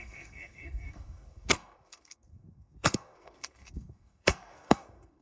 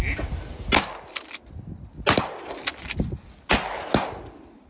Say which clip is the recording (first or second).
second